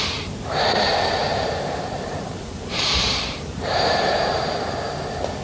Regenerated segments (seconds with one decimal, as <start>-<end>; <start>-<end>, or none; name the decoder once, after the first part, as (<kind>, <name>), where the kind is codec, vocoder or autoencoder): 1.2-4.4 (vocoder, BigVGAN v2)